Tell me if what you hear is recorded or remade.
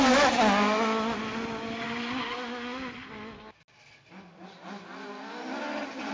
recorded